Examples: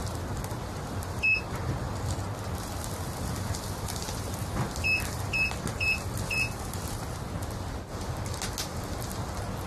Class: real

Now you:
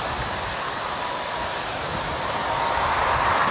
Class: real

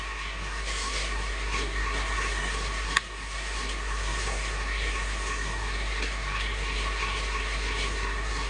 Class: fake